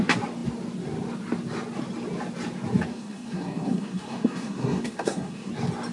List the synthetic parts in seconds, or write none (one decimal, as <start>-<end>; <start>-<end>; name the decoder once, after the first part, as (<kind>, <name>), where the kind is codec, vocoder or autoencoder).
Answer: 2.9-5.5 (codec, SNAC)